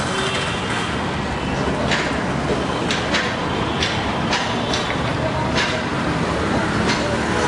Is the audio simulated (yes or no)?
no